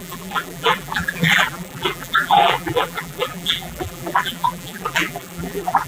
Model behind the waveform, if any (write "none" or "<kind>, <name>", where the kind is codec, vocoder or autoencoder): vocoder, BigVGAN v2